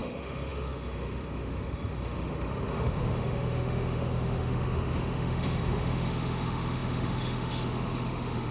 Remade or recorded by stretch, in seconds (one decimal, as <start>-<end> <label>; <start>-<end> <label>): 0.0-8.5 remade